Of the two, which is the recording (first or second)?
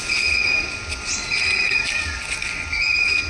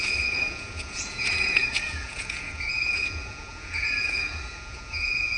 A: first